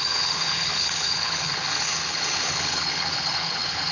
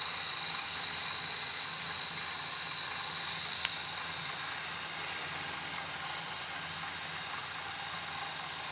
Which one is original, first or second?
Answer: second